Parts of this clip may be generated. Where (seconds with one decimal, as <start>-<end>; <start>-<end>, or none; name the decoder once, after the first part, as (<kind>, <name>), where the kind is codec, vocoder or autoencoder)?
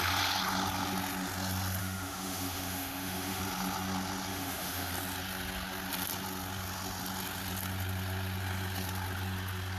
1.8-3.4 (autoencoder, DAC-VAE); 4.3-4.9